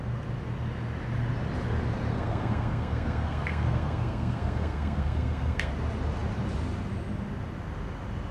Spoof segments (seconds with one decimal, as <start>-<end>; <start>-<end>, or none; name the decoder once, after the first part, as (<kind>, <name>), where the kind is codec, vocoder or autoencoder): 2.1-5.7 (codec, SNAC)

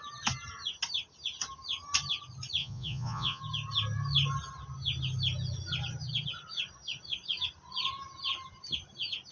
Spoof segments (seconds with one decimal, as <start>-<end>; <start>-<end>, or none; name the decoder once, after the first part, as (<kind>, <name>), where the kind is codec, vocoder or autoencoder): 2.6-3.4 (vocoder, Vocos)

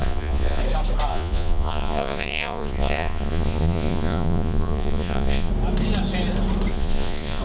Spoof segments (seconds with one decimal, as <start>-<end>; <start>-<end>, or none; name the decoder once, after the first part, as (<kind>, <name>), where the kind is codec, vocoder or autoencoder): 0.0-0.6 (vocoder, Vocos); 1.1-5.5; 6.7-7.4

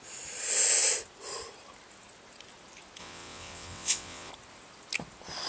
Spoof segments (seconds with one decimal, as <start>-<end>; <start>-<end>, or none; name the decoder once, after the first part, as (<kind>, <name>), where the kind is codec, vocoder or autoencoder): 3.0-4.3 (vocoder, WaveNeXt)

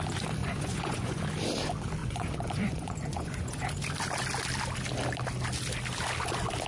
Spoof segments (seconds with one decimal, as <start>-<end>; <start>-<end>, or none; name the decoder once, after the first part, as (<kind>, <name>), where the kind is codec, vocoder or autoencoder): 0.4-1.2 (vocoder, Vocos); 2.0-3.7

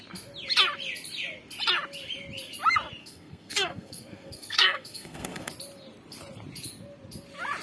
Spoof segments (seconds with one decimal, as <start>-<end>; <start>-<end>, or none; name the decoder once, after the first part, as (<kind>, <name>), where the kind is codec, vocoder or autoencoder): 3.0-5.5 (codec, SNAC)